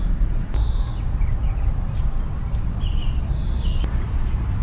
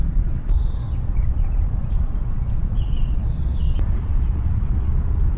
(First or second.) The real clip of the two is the first